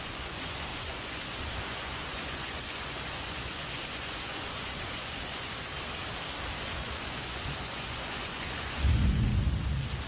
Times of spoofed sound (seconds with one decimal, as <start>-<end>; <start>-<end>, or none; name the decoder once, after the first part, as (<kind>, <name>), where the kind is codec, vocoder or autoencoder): 0.0-5.7 (vocoder, Vocos); 6.6-9.3